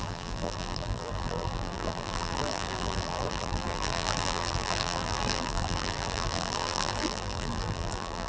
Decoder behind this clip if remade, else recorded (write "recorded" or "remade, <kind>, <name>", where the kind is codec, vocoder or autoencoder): remade, vocoder, BigVGAN v2